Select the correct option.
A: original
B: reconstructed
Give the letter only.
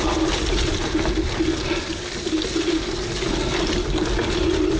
A